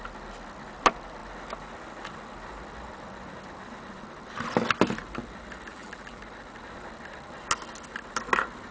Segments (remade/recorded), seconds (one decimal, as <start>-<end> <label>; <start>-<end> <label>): 0.0-5.7 recorded; 5.7-6.2 remade; 6.2-8.7 recorded